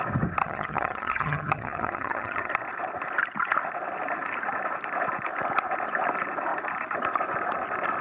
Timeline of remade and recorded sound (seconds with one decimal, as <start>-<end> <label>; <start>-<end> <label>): 0.0-0.4 recorded; 0.4-2.5 remade; 2.5-8.0 recorded